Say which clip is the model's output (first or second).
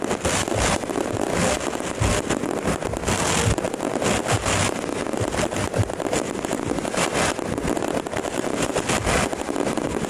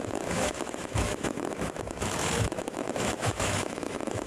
second